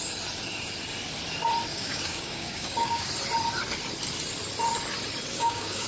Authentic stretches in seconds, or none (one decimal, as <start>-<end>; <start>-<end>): 0.0-1.7; 3.1-5.3